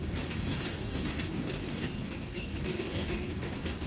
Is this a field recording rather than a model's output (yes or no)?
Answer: no